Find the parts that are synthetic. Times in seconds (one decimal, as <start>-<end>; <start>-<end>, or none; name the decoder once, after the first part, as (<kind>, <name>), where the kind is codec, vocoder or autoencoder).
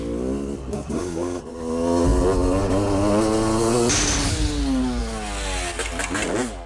0.7-1.4 (codec, SNAC)